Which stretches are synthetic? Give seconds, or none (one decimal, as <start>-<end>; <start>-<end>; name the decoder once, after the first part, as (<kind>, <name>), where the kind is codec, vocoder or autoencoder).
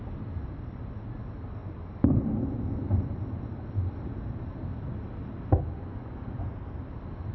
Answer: 5.7-6.3 (vocoder, Vocos)